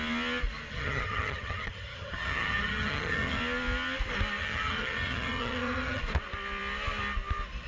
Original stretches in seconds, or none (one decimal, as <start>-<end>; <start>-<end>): 0.0-0.7; 3.4-4.4; 6.0-7.7

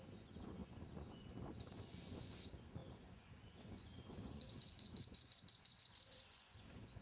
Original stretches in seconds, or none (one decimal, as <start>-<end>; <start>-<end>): none

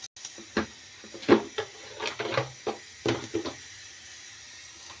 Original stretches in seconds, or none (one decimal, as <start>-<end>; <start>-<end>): 0.0-5.0

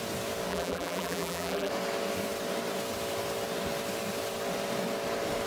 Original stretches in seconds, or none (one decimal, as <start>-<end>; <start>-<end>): 0.0-0.5; 1.7-5.5

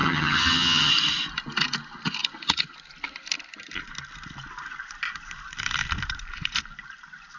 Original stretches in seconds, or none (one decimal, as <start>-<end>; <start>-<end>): 0.9-7.4

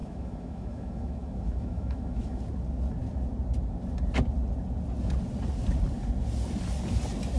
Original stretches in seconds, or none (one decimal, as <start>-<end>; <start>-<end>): 2.4-7.4

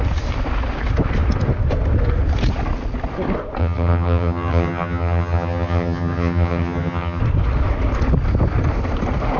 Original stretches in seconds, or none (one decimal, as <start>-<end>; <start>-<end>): 0.0-3.6; 7.2-9.4

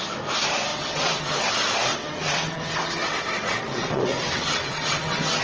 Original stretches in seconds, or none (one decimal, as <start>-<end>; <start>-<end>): 0.0-0.7; 1.5-1.9